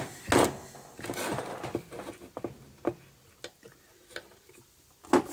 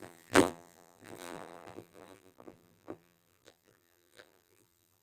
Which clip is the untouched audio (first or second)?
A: first